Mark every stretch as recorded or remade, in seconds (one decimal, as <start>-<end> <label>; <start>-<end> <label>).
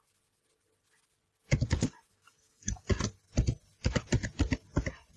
0.0-2.1 recorded; 2.1-2.9 remade; 2.9-5.2 recorded